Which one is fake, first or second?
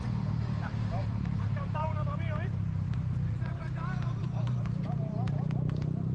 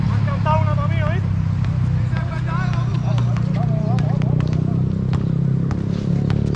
first